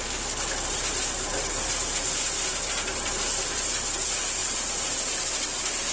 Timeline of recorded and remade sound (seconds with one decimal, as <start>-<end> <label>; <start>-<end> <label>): 0.0-5.9 recorded